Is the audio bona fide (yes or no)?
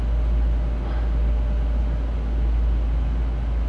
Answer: yes